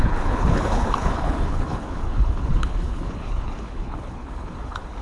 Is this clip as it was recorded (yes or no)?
no